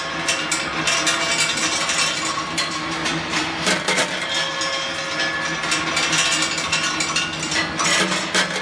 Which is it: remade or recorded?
recorded